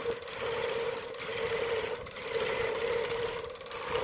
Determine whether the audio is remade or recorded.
recorded